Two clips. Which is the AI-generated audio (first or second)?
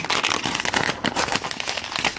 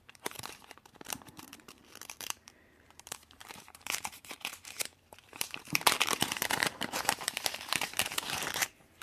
second